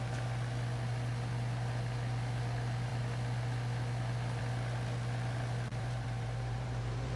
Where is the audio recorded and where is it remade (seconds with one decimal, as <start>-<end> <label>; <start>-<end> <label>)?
0.0-5.7 recorded; 5.7-7.2 remade

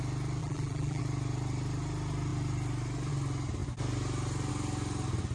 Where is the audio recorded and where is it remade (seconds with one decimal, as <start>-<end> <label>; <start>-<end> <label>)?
0.0-0.4 recorded; 0.4-1.0 remade; 1.0-5.3 recorded